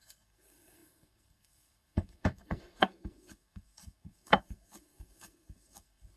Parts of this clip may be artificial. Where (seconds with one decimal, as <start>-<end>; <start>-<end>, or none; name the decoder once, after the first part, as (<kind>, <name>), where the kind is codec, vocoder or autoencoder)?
0.0-6.2 (codec, SNAC)